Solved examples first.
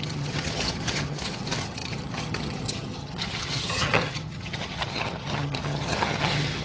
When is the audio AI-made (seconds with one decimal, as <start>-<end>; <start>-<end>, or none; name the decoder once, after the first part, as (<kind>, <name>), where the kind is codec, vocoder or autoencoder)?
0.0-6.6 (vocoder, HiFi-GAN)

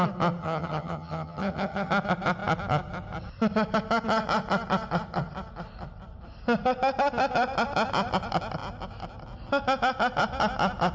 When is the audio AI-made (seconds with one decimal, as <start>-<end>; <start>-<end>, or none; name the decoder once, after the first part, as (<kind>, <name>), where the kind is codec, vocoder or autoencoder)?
0.4-1.9 (vocoder, HiFi-GAN)

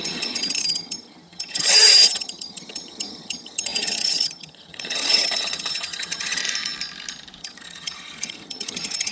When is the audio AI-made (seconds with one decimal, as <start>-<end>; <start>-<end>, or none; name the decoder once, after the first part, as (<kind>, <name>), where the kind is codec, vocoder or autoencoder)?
0.0-6.4 (vocoder, HiFi-GAN); 7.4-9.1

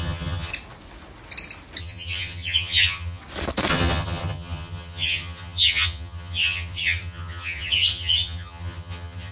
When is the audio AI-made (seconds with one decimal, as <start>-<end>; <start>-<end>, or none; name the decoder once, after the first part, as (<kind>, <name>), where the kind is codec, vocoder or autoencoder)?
0.0-0.5 (vocoder, HiFi-GAN); 1.8-3.2; 3.7-9.3

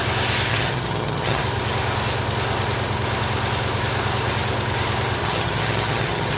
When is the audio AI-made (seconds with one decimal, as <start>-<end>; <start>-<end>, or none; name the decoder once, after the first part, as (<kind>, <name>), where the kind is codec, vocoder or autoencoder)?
0.5-1.4 (vocoder, HiFi-GAN); 5.2-6.4

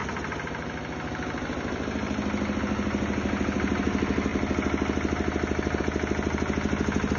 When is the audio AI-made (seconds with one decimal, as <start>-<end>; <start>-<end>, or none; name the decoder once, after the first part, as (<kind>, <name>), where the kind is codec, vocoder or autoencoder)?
none

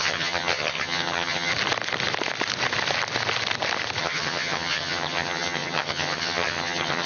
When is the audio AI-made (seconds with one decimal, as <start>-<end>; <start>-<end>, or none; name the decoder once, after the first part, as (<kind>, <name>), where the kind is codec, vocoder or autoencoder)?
0.0-1.5 (vocoder, HiFi-GAN); 4.0-7.1